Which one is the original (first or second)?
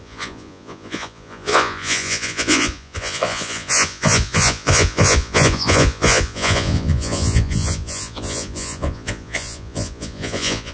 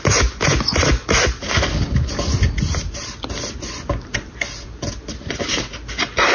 second